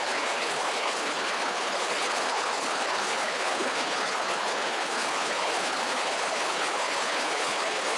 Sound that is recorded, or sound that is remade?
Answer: remade